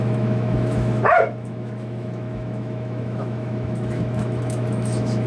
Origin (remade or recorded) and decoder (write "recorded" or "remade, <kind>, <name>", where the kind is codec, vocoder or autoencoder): remade, autoencoder, DAC-VAE